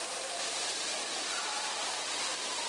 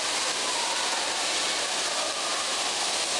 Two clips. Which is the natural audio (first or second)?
second